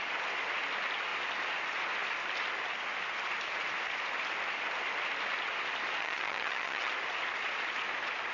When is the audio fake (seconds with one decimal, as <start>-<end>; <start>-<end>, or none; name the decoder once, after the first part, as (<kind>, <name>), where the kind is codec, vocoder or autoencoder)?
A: 6.0-6.9 (vocoder, HiFi-GAN)